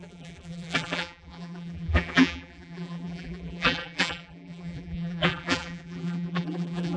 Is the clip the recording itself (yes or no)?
no